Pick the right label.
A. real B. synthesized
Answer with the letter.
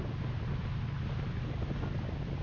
A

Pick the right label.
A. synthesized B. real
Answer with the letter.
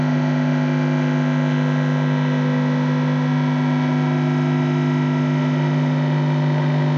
A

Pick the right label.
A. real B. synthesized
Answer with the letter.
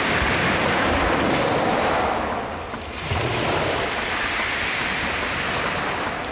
A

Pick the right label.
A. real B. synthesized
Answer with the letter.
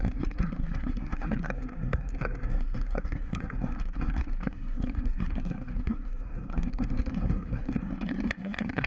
B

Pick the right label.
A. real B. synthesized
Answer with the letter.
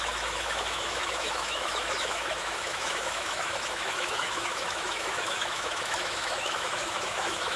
B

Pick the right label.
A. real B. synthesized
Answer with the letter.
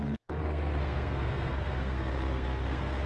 B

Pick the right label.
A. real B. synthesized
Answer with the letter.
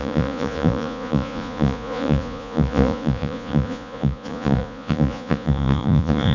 B